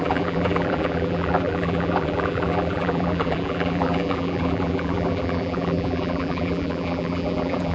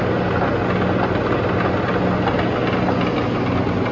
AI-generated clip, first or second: first